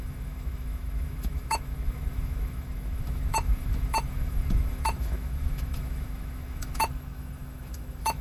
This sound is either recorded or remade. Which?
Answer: remade